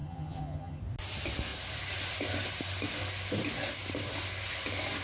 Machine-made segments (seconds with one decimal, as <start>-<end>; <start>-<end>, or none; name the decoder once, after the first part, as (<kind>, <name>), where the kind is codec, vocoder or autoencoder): 0.0-0.8 (vocoder, HiFi-GAN)